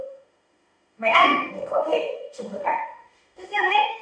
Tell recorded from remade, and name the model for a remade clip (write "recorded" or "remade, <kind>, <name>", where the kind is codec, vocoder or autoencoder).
remade, autoencoder, DAC-VAE